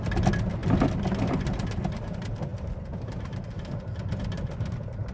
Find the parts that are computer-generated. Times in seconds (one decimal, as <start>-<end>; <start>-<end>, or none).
none